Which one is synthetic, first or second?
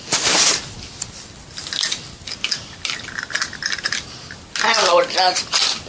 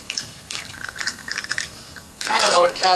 second